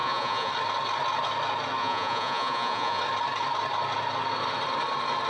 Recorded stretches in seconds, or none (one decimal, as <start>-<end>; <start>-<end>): 0.5-1.8; 3.0-5.3